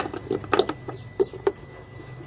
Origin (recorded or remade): recorded